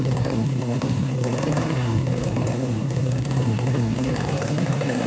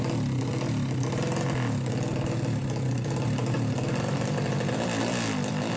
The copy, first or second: first